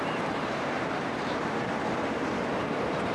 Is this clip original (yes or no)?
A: no